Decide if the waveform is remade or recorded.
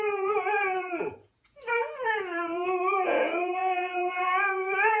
remade